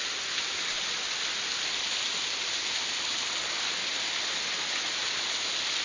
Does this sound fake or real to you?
real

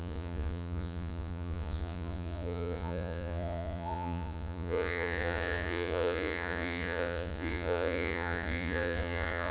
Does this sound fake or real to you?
fake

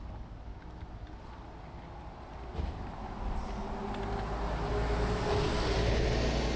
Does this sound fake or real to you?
real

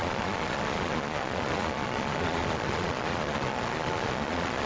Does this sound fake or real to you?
fake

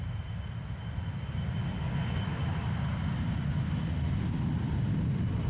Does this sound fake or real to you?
real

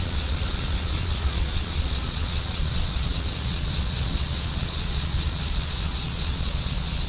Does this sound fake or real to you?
fake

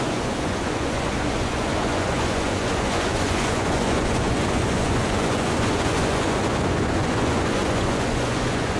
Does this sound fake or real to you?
fake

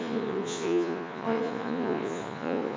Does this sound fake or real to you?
fake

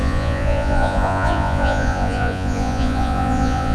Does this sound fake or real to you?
fake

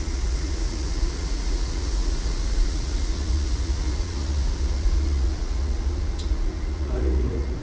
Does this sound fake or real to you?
fake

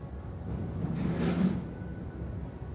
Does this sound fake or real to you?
real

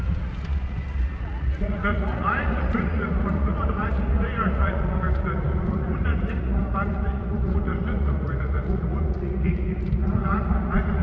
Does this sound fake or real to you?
fake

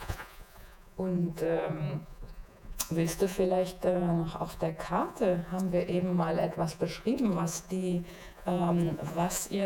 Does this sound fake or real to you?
fake